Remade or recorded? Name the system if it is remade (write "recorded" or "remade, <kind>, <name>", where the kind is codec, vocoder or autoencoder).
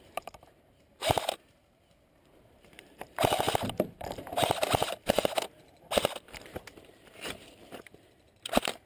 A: remade, vocoder, BigVGAN v2